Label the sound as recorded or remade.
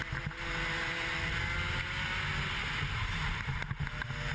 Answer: recorded